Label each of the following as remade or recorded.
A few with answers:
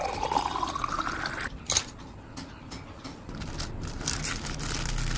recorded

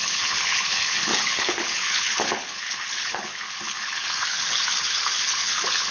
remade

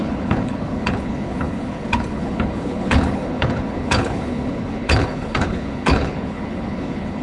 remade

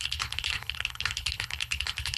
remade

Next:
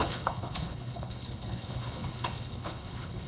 remade